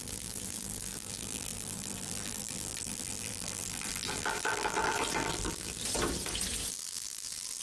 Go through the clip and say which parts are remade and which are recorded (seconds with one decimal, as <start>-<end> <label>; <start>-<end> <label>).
0.0-5.8 remade; 5.8-6.7 recorded; 6.7-7.6 remade